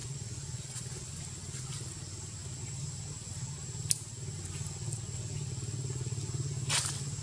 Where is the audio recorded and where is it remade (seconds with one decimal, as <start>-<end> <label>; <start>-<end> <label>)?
0.0-1.2 remade; 1.2-7.2 recorded